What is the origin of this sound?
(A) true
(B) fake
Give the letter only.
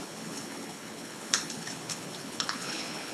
B